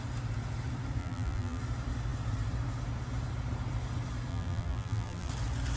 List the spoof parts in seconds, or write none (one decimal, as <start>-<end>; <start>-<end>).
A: 1.0-1.6; 4.3-5.3